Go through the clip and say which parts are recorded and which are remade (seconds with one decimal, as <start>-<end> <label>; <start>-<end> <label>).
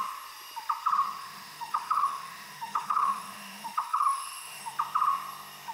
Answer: 0.0-1.2 recorded; 1.2-4.6 remade; 4.6-5.7 recorded